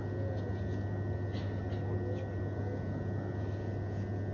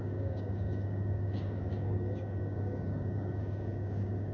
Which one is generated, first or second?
second